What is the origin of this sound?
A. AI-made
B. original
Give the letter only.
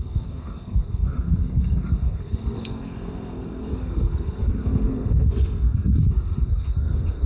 A